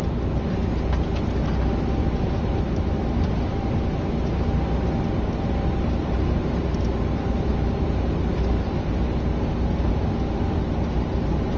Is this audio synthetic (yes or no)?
no